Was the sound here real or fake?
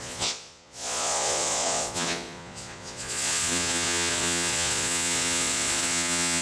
fake